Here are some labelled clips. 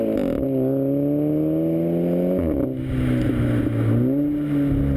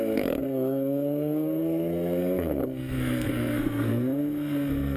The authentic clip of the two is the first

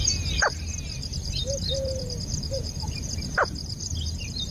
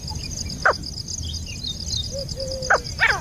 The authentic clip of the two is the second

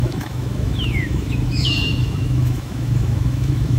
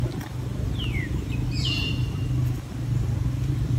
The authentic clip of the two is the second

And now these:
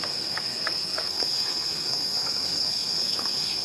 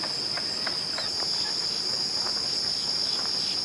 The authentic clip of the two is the second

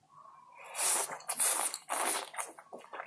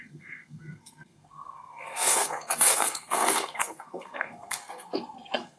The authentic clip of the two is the first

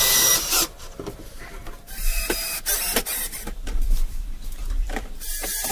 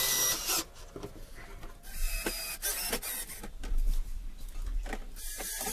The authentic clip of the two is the second